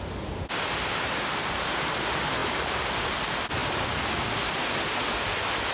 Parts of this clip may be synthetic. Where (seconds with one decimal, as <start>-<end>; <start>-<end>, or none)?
none